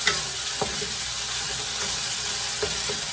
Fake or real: real